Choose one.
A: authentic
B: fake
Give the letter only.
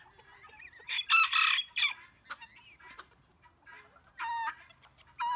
A